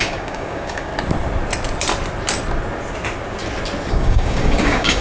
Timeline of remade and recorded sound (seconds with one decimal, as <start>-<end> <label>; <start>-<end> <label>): 0.0-0.9 remade; 0.9-3.9 recorded; 3.9-5.0 remade